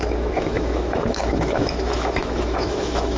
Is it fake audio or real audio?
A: fake